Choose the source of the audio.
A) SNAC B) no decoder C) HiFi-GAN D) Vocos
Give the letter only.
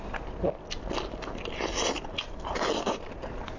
B